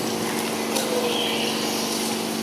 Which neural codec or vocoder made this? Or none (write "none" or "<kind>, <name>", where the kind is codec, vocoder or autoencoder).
none